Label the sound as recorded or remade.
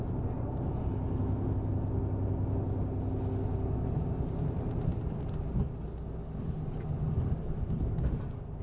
recorded